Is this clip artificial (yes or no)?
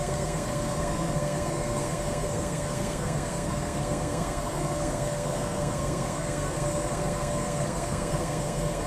yes